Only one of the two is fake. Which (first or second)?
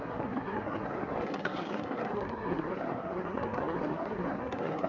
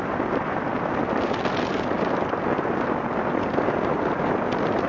first